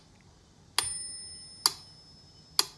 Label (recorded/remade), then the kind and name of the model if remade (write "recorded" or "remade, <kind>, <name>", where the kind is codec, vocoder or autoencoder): recorded